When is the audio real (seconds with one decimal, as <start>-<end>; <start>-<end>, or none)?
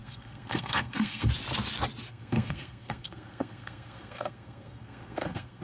1.3-2.1